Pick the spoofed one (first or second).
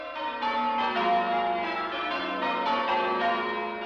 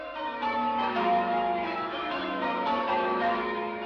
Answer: second